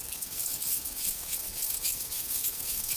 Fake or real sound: fake